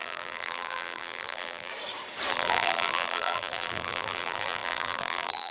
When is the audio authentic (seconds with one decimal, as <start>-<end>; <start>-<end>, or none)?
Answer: 1.7-2.3

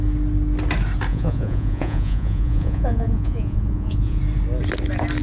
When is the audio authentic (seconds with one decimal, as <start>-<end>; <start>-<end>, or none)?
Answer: 0.0-1.1; 4.2-5.2

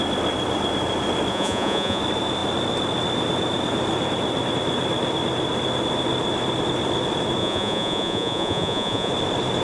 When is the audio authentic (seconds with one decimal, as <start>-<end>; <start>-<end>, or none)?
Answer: 0.0-1.3; 2.0-7.4; 9.1-9.6

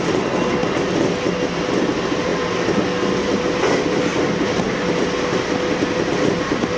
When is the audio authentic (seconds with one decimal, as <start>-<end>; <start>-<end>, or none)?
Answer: 0.0-6.8

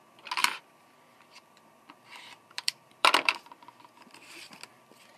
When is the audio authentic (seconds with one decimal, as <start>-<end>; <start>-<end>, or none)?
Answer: 0.0-0.4; 3.5-5.2

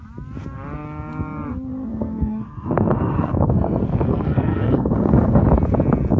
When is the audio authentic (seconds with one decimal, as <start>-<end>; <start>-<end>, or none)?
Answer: 0.0-1.9; 5.4-6.2

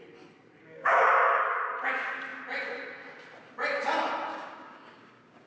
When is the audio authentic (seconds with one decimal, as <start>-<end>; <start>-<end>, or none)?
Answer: 0.0-0.6; 1.7-4.3